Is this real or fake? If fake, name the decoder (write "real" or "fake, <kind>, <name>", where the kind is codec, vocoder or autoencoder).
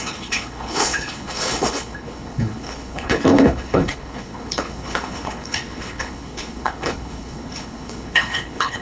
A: fake, codec, HILCodec